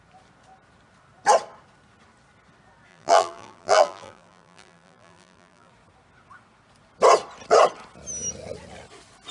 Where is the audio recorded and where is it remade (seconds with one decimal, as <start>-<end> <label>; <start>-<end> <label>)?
0.0-2.9 recorded; 2.9-5.7 remade; 5.7-9.3 recorded